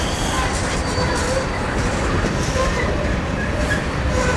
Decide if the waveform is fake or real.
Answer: fake